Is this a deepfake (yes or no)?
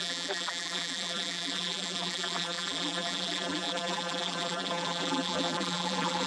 yes